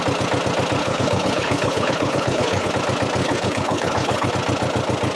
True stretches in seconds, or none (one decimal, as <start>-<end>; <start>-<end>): 0.0-0.8; 2.7-3.2; 4.3-5.2